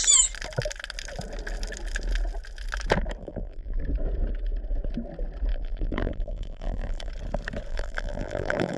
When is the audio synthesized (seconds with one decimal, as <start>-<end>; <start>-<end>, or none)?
3.2-3.8; 5.5-7.1; 7.7-8.8